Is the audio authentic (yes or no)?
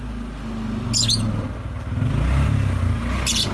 yes